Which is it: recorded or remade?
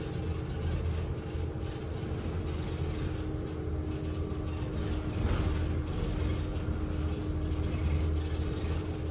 recorded